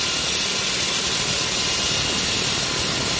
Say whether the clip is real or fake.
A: real